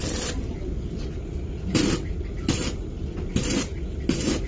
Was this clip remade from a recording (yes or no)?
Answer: no